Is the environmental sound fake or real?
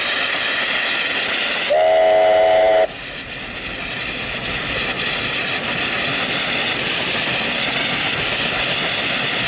real